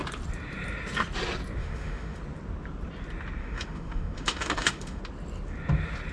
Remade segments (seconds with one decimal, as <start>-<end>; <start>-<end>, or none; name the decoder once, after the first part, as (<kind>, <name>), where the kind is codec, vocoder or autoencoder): 1.6-2.2 (autoencoder, DAC-VAE); 3.4-5.0